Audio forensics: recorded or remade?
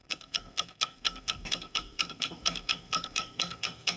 remade